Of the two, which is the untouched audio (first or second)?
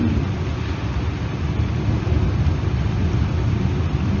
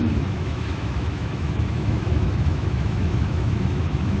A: first